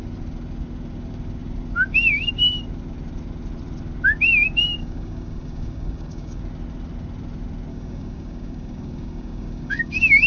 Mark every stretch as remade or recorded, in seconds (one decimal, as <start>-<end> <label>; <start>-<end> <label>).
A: 0.0-4.8 recorded; 4.8-6.4 remade; 6.4-7.7 recorded; 7.7-10.3 remade